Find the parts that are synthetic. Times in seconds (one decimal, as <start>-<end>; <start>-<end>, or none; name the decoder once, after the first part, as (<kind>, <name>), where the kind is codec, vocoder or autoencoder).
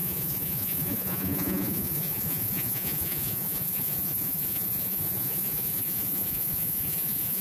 0.0-7.4 (vocoder, Vocos)